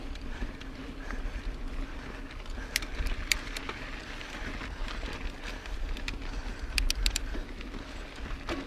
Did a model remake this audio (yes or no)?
no